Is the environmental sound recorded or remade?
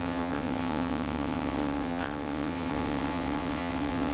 remade